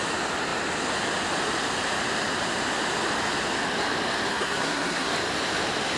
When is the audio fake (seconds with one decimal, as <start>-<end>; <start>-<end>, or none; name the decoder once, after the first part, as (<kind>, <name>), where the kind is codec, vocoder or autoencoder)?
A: 4.3-5.1 (codec, SNAC)